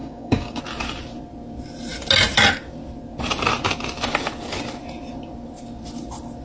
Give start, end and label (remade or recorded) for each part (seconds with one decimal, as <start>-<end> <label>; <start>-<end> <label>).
0.0-0.6 remade; 0.6-6.4 recorded